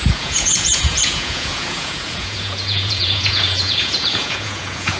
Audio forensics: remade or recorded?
remade